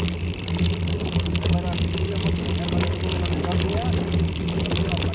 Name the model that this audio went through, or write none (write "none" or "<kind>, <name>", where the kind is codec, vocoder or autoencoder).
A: none